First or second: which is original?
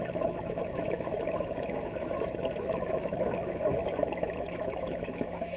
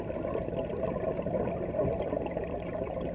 second